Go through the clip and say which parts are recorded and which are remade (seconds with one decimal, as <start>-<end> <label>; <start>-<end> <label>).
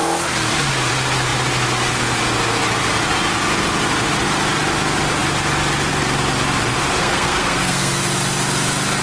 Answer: 0.0-7.0 recorded; 7.0-8.0 remade; 8.0-9.0 recorded